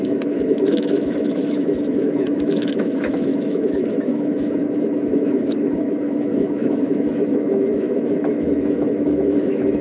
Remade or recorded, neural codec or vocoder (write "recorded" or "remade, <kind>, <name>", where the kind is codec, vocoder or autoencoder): remade, autoencoder, DAC-VAE